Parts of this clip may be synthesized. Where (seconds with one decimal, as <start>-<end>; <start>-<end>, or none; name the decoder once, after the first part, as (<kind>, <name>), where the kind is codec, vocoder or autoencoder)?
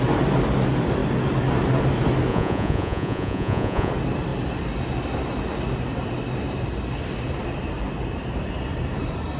2.3-3.9 (vocoder, Vocos)